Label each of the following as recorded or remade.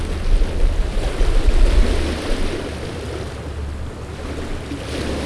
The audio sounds recorded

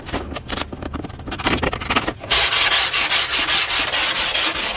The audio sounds recorded